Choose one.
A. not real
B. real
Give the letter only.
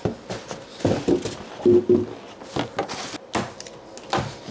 B